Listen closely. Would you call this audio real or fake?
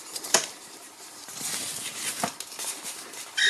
fake